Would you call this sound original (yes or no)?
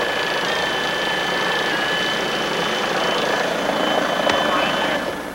yes